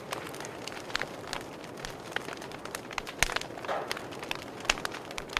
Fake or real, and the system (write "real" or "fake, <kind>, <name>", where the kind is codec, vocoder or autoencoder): real